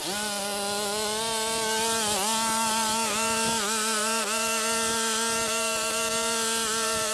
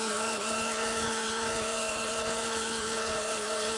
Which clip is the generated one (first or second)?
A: second